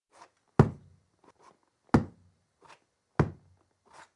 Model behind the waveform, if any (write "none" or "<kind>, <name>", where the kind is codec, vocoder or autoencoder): none